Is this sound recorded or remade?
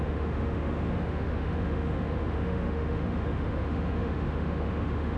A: remade